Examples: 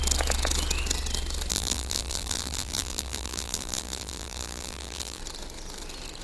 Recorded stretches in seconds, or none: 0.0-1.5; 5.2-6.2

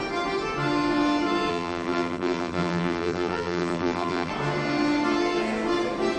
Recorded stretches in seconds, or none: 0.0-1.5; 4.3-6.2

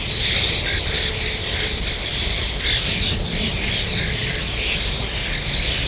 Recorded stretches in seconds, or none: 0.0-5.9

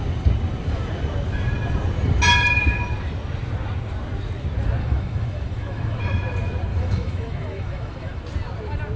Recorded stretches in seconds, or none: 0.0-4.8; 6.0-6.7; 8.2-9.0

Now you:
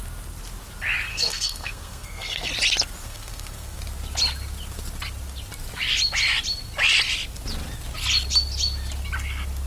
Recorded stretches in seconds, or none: 0.0-1.1; 2.5-3.0; 3.8-9.7